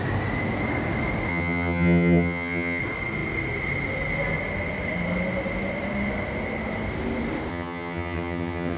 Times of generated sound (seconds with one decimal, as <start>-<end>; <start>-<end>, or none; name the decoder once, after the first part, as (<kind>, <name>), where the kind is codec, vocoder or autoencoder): 1.3-2.8 (vocoder, HiFi-GAN); 7.5-8.8